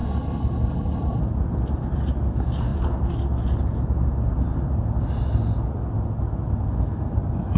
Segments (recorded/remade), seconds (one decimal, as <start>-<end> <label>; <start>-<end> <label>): 0.0-1.2 remade; 1.2-7.6 recorded